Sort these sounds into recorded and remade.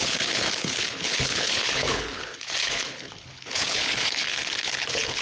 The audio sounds remade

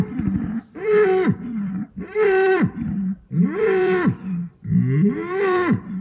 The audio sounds remade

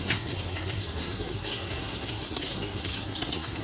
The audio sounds remade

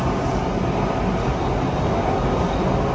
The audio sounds recorded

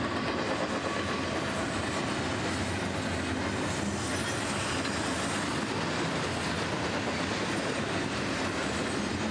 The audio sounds recorded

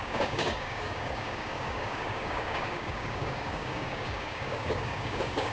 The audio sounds remade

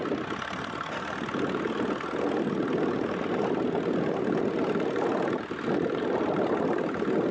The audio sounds recorded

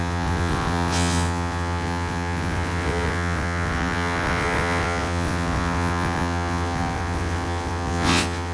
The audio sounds remade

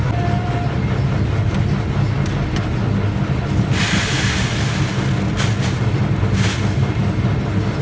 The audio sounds recorded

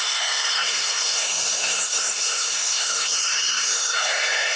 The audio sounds remade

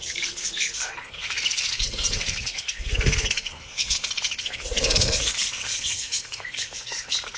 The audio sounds remade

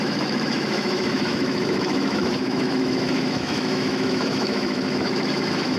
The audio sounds remade